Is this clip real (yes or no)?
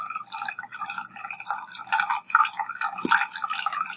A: yes